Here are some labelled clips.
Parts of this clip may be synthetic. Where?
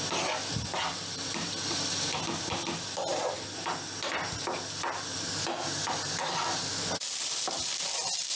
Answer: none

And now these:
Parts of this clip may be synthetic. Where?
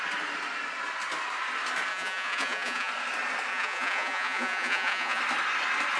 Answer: 1.9-2.9 (vocoder, Vocos); 3.5-5.2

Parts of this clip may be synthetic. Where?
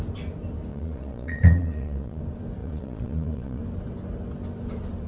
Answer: 0.7-2.2 (vocoder, Vocos); 2.6-3.6